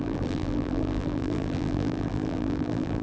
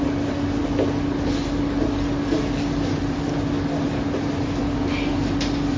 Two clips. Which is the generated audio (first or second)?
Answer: first